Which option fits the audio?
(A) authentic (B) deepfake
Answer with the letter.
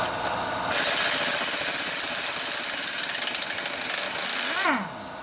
A